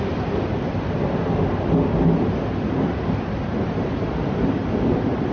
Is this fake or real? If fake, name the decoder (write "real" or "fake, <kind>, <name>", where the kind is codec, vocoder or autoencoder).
real